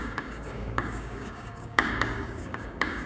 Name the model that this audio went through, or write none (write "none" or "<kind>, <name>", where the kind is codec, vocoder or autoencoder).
codec, DAC